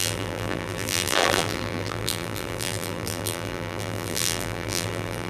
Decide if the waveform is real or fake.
fake